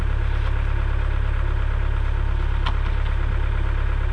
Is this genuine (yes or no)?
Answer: yes